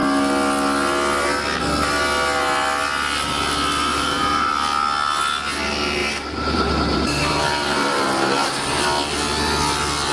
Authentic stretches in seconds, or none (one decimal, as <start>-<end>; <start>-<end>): 0.0-3.9; 4.5-6.0; 8.8-10.1